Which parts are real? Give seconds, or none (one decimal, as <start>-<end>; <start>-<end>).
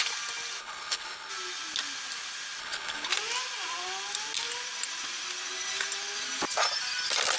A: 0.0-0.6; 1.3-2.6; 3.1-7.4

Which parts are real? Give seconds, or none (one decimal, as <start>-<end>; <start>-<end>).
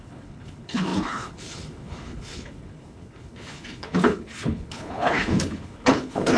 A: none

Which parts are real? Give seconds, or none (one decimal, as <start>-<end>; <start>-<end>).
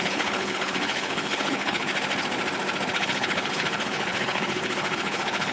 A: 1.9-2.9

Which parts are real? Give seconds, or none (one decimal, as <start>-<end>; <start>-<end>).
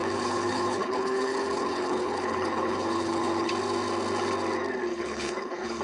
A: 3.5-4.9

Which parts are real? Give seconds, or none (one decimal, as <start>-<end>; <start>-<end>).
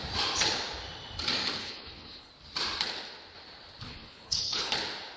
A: 0.0-1.6; 2.3-3.9; 4.7-5.2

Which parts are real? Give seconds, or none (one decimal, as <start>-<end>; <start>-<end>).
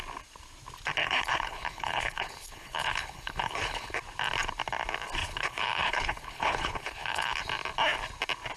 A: 0.0-1.0; 4.0-5.2; 7.4-8.6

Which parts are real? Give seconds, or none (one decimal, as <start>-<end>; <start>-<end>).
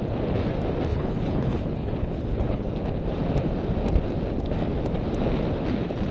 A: 0.0-0.9; 2.7-6.1